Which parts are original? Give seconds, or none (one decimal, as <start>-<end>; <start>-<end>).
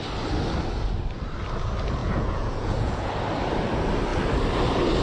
0.0-2.0; 3.1-5.0